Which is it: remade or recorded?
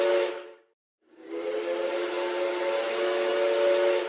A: recorded